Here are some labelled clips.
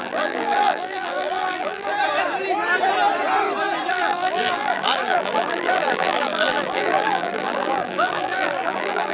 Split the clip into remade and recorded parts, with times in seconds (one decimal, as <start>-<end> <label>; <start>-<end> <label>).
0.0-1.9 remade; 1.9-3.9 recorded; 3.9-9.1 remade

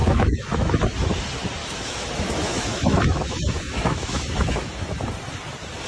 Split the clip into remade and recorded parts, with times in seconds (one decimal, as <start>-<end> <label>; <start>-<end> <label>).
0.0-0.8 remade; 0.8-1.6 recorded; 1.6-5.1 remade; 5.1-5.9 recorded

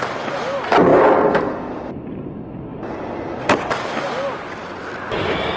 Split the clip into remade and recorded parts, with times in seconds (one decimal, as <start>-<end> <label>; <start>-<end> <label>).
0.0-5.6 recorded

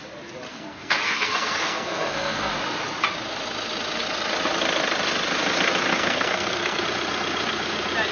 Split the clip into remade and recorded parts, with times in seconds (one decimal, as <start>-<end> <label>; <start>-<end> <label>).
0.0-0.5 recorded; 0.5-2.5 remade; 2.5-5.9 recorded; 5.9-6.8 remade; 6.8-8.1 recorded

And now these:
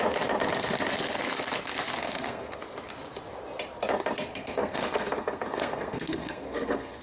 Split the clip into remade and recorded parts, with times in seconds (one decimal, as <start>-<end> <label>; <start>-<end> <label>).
0.0-2.0 recorded; 2.0-2.6 remade; 2.6-4.3 recorded; 4.3-7.0 remade